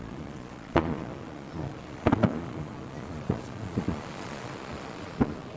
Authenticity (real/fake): fake